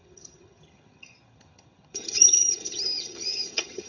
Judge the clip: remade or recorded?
remade